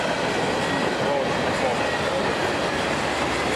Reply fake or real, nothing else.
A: real